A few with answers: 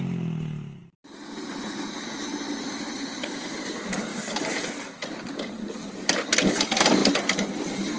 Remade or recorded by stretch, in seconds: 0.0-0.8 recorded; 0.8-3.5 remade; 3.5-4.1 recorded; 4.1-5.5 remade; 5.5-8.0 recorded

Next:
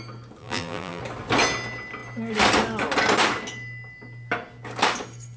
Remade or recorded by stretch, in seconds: 0.0-0.4 recorded; 0.4-1.0 remade; 1.0-5.4 recorded

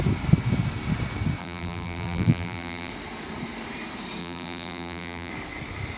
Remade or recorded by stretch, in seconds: 0.0-1.4 recorded; 1.4-2.9 remade; 2.9-4.2 recorded; 4.2-5.3 remade; 5.3-6.0 recorded

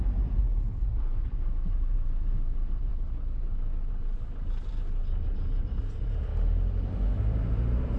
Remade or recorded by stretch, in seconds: 0.0-0.4 remade; 0.4-1.7 recorded; 1.7-2.9 remade; 2.9-3.9 recorded; 3.9-6.3 remade; 6.3-7.2 recorded; 7.2-8.0 remade

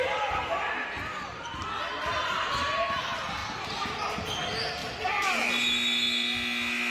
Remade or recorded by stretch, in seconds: 0.0-3.4 recorded; 3.4-4.2 remade; 4.2-4.8 recorded; 4.8-5.4 remade; 5.4-6.9 recorded

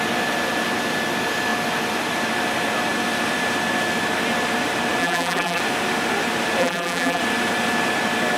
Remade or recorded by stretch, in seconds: 0.0-5.0 recorded; 5.0-5.6 remade; 5.6-6.6 recorded; 6.6-7.2 remade; 7.2-8.4 recorded